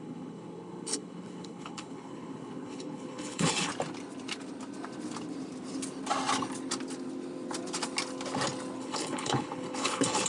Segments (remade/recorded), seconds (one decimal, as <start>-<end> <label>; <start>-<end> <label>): 0.0-3.7 remade; 3.7-8.8 recorded; 8.8-10.3 remade